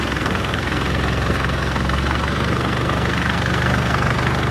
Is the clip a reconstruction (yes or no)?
yes